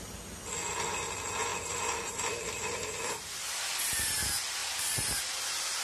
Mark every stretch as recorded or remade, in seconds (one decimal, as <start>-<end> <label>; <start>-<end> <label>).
0.0-1.5 recorded; 1.5-3.6 remade; 3.6-4.6 recorded; 4.6-5.8 remade